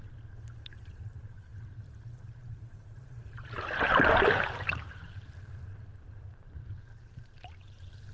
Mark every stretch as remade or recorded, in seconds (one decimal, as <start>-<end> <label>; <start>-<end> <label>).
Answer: 0.0-1.5 recorded; 1.5-5.4 remade; 5.4-8.1 recorded